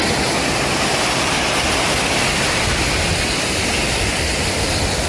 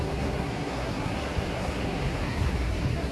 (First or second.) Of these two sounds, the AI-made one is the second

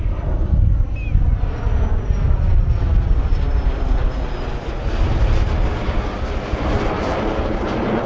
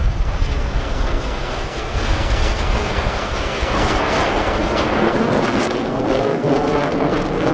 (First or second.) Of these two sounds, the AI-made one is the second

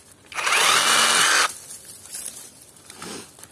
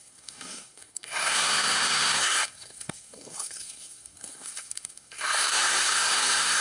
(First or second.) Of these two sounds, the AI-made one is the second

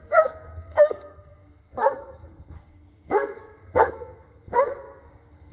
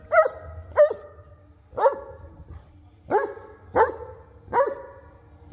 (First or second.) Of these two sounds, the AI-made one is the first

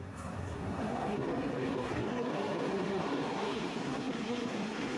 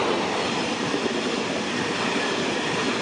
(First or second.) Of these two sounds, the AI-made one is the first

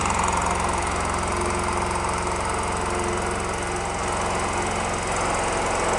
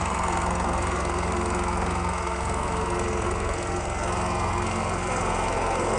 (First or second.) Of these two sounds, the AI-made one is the second